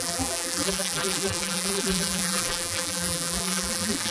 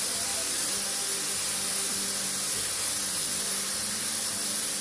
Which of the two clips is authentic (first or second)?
second